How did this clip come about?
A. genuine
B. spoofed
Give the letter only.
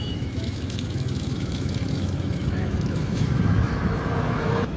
B